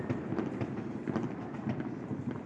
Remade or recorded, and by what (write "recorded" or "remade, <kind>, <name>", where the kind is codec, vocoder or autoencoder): recorded